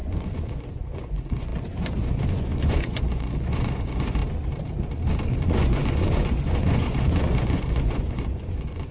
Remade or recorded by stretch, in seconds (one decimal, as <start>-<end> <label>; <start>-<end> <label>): 0.0-4.2 remade; 4.2-5.3 recorded; 5.3-8.9 remade